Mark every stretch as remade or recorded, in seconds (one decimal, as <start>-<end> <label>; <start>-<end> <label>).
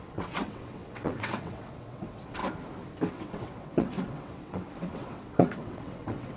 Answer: 0.0-2.4 remade; 2.4-3.1 recorded; 3.1-6.4 remade